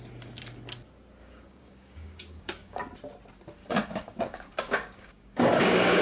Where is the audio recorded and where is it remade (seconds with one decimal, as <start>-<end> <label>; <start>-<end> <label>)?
0.0-1.2 recorded; 1.2-2.8 remade; 2.8-3.6 recorded; 3.6-6.0 remade

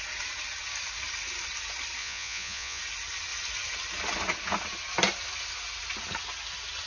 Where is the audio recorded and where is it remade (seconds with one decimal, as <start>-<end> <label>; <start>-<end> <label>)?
0.0-2.0 recorded; 2.0-2.8 remade; 2.8-6.9 recorded

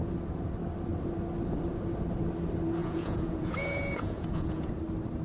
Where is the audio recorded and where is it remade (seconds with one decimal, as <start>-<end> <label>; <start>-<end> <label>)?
0.0-2.8 recorded; 2.8-4.7 remade; 4.7-5.2 recorded

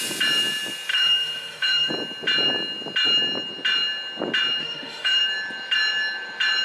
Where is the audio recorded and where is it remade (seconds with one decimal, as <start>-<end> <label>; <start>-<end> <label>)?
0.0-0.9 recorded; 0.9-1.9 remade; 1.9-4.6 recorded; 4.6-5.2 remade; 5.2-6.6 recorded